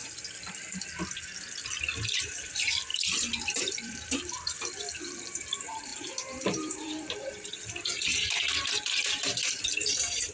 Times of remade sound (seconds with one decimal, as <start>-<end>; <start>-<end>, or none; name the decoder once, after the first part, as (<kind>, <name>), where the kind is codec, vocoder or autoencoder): 2.2-10.3 (vocoder, BigVGAN v2)